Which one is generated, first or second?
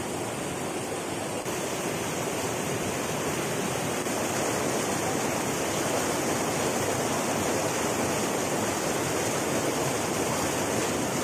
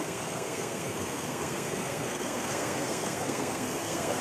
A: second